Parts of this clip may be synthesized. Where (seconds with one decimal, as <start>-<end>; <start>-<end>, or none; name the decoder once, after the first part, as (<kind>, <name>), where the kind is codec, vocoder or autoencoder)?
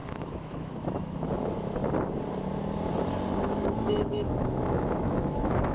0.0-1.8 (autoencoder, DAC-VAE); 3.4-5.7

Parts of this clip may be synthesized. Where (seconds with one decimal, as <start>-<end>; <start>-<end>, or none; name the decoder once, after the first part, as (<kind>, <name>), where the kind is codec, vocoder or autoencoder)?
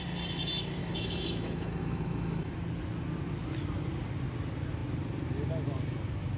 0.8-2.5 (autoencoder, DAC-VAE)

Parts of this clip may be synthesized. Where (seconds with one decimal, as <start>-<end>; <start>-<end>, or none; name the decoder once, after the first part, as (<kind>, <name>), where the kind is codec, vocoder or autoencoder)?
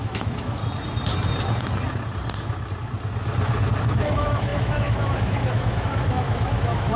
0.0-0.6 (autoencoder, DAC-VAE); 3.8-7.0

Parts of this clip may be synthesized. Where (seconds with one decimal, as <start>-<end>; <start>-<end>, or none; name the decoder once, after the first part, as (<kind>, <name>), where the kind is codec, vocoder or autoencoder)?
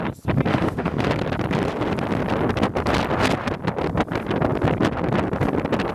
0.5-1.1 (autoencoder, DAC-VAE)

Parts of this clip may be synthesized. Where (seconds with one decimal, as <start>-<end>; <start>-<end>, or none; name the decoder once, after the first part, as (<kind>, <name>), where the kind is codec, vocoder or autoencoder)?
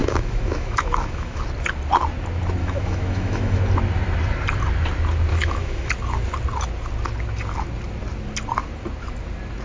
0.0-1.4 (autoencoder, DAC-VAE); 2.6-3.6; 5.3-5.9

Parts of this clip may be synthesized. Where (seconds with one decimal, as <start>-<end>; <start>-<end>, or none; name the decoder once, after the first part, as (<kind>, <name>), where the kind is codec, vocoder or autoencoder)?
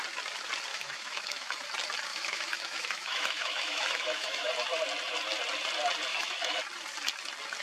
0.7-1.6 (autoencoder, DAC-VAE); 2.1-4.5; 6.1-6.6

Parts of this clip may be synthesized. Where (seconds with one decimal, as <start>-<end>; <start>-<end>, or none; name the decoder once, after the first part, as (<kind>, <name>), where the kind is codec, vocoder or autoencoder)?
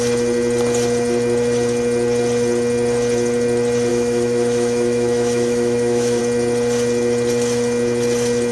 3.9-6.2 (autoencoder, DAC-VAE)